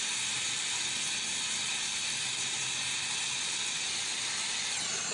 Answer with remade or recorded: recorded